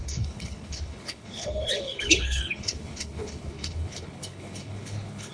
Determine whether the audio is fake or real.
fake